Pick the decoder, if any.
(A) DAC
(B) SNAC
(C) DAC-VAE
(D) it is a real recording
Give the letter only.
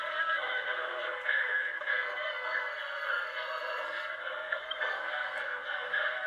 B